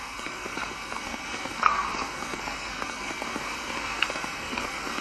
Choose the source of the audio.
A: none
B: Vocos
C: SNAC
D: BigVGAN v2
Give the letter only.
C